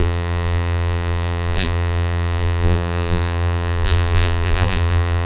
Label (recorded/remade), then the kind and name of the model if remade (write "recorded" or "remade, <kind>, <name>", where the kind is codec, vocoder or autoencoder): remade, vocoder, BigVGAN v2